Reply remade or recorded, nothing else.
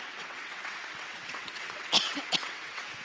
remade